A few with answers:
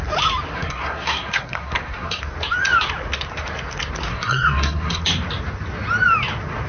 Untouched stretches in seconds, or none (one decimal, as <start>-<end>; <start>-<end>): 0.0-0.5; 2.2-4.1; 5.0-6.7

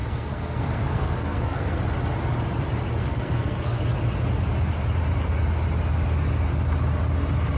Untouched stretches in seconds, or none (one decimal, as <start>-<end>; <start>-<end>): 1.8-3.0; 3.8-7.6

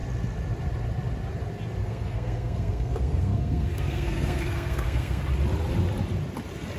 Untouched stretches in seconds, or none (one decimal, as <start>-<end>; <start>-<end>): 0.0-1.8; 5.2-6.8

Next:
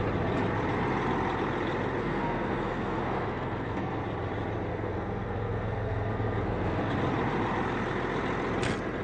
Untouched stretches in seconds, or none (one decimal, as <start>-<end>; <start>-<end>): 0.0-2.0; 4.0-4.7; 6.8-9.0